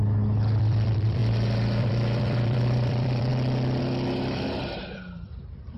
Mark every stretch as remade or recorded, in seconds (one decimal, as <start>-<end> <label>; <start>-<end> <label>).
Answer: 0.0-1.2 remade; 1.2-1.8 recorded; 1.8-3.3 remade; 3.3-3.8 recorded; 3.8-5.8 remade